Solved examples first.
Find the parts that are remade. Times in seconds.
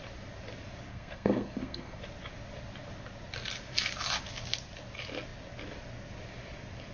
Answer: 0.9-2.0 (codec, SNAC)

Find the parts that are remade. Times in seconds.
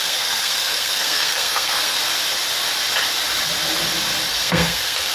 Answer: 0.0-2.0 (codec, SNAC); 4.3-5.1